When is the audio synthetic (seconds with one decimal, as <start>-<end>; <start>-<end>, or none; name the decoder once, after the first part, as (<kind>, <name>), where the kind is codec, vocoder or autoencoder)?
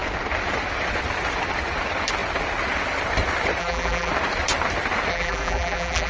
3.6-4.1 (vocoder, BigVGAN v2); 5.1-6.1